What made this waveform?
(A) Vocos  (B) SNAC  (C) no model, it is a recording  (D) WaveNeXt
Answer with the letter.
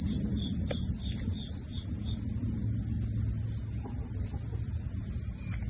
C